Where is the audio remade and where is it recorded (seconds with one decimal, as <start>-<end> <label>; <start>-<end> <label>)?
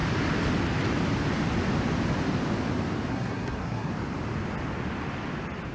0.0-3.1 recorded; 3.1-3.9 remade; 3.9-5.7 recorded